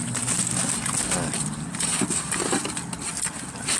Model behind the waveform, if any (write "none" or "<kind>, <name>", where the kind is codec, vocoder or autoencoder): none